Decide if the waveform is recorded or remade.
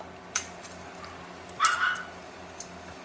recorded